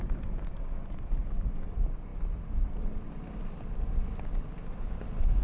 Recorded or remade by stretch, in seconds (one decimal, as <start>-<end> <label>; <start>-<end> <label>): 0.0-5.4 recorded